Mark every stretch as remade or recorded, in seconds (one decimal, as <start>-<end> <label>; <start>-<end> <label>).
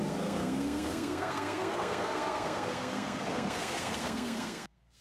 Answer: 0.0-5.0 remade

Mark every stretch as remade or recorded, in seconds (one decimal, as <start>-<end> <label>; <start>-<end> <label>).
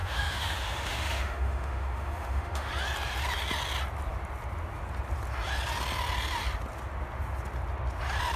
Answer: 0.0-2.7 remade; 2.7-8.4 recorded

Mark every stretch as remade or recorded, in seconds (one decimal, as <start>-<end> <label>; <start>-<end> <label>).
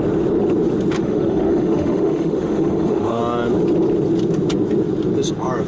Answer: 0.0-1.0 recorded; 1.0-3.2 remade; 3.2-5.7 recorded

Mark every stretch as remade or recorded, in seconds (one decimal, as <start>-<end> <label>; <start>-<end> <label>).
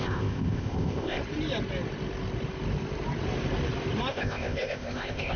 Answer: 0.0-1.2 remade; 1.2-4.1 recorded; 4.1-5.4 remade